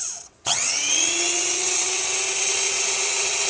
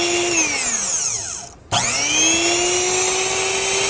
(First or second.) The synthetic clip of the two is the first